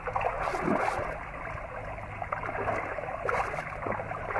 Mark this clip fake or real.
real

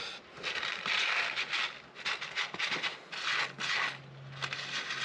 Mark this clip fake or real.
real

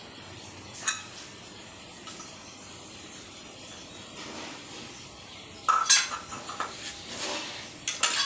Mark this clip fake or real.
real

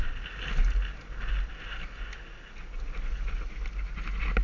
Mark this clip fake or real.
real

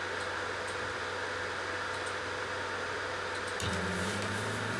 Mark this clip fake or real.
real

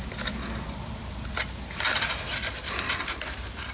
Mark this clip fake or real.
real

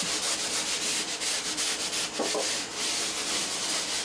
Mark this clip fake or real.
real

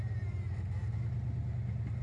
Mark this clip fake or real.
real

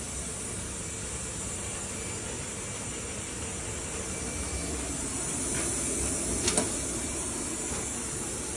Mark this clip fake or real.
real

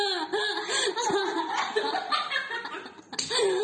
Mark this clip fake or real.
real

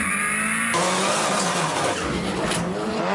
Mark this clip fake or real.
real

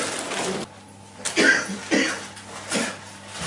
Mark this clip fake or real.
real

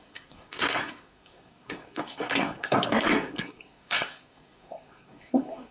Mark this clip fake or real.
fake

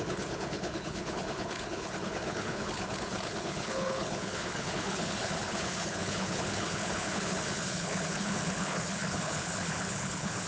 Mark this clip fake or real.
fake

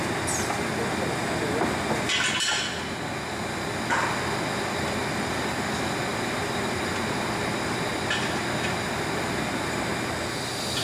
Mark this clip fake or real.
real